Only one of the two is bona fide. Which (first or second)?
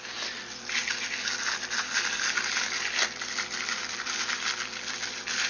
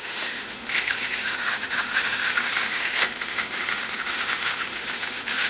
first